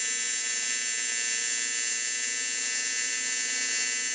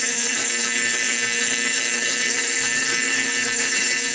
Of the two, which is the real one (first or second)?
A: first